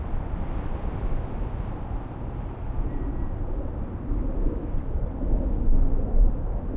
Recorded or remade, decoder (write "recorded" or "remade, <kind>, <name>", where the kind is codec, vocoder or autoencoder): recorded